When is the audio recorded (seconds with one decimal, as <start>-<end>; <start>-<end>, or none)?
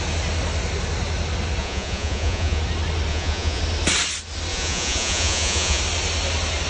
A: 0.0-1.6; 2.6-3.1; 3.6-4.5; 5.8-6.7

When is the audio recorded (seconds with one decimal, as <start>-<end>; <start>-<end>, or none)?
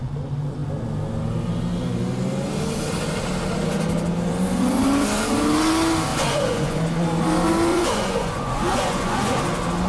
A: 0.0-6.1; 6.8-7.7; 9.4-9.9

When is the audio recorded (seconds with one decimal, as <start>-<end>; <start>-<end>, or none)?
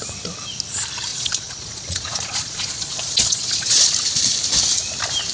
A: 0.0-1.1; 3.9-5.3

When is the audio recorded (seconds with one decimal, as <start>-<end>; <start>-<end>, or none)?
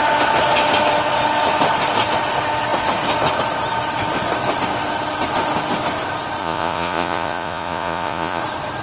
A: 0.0-6.4; 8.4-8.8